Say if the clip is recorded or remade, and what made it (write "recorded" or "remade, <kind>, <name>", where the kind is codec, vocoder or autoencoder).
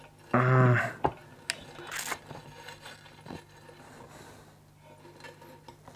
recorded